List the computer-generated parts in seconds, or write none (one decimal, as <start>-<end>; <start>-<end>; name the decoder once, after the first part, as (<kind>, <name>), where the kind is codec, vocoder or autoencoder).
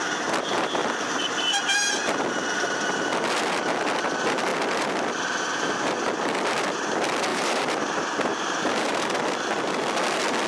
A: 0.8-1.9 (vocoder, BigVGAN v2); 7.3-7.8; 8.3-9.2